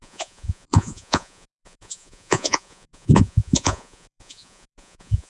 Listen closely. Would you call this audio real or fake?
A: fake